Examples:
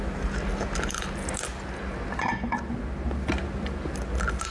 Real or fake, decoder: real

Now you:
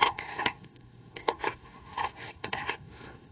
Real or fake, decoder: fake, codec, SNAC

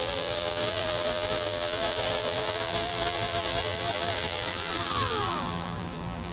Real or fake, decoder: fake, vocoder, BigVGAN v2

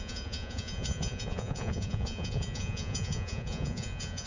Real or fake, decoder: fake, vocoder, Vocos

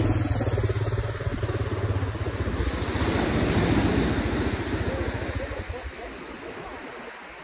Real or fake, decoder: real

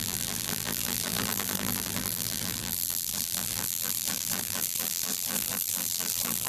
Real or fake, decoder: fake, vocoder, BigVGAN v2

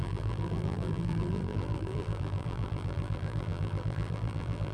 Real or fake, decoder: fake, vocoder, BigVGAN v2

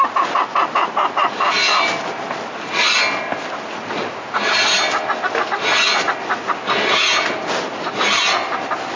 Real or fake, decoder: real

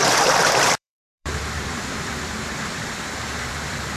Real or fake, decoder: fake, vocoder, BigVGAN v2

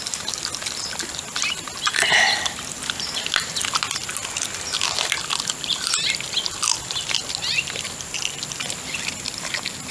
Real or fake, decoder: real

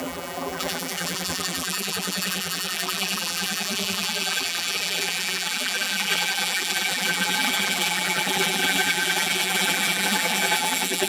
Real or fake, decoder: fake, vocoder, BigVGAN v2